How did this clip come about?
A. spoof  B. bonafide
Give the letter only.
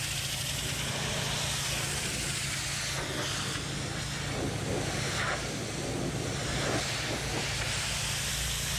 B